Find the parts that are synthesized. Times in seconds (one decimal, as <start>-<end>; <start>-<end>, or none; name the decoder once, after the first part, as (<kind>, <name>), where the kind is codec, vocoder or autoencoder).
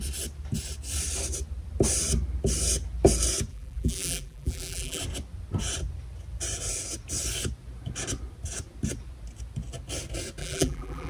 3.5-5.0 (vocoder, BigVGAN v2); 10.4-11.1